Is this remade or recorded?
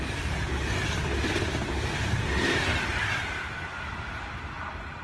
recorded